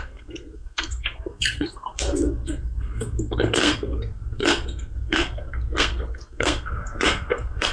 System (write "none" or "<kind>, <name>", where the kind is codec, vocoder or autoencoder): codec, SNAC